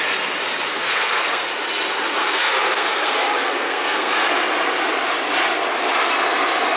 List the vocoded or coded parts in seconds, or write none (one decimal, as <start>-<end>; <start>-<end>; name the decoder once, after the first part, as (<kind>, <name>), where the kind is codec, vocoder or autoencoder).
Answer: 0.7-1.4 (codec, SNAC); 2.2-4.3